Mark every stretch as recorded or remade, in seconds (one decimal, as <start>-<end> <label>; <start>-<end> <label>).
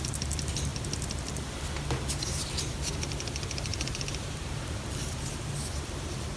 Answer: 0.0-6.4 recorded